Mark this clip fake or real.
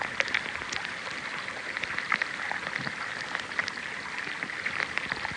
real